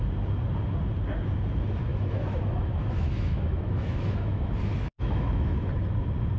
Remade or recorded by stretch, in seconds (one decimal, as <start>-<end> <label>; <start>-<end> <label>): 0.0-1.9 recorded; 1.9-5.7 remade; 5.7-6.4 recorded